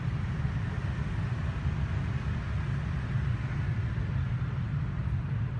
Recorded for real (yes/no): yes